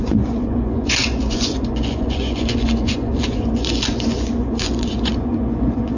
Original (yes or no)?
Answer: no